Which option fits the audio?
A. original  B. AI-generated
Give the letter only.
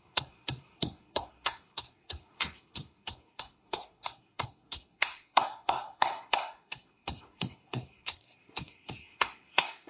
B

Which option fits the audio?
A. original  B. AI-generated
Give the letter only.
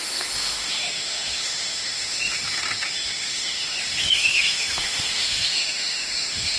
B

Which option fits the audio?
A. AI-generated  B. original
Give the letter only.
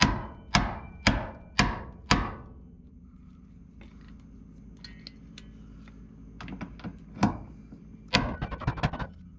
B